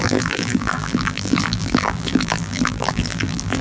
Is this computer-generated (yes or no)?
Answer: yes